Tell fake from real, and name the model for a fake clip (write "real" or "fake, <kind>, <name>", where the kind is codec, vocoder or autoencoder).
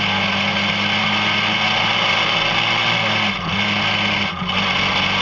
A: real